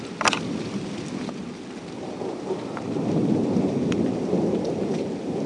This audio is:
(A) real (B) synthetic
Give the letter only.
B